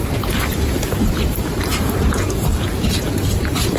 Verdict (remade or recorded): remade